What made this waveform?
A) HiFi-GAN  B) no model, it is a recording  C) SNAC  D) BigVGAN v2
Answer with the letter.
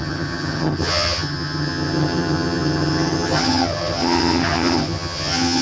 A